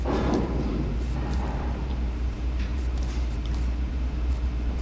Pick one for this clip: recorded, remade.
remade